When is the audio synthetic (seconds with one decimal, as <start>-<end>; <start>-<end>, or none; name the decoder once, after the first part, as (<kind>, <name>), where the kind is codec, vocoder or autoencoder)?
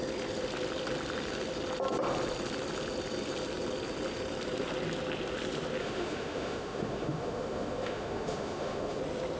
5.8-9.0 (autoencoder, DAC-VAE)